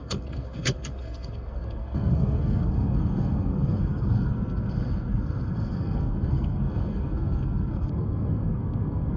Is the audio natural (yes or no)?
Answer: no